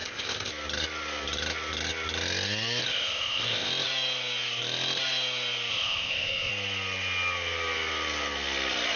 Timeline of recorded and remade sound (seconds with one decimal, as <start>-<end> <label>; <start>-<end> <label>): 0.0-0.5 remade; 0.5-2.9 recorded; 2.9-3.7 remade; 3.7-5.7 recorded; 5.7-6.5 remade; 6.5-9.0 recorded